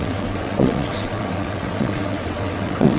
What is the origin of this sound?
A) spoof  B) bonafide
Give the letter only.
A